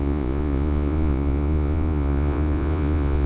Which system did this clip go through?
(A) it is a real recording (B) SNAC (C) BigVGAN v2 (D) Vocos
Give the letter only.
D